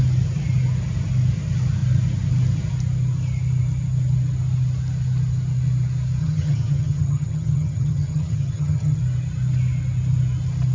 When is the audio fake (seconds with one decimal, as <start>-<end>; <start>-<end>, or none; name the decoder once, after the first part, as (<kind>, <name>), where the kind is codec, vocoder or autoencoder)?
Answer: 6.2-9.0 (vocoder, HiFi-GAN)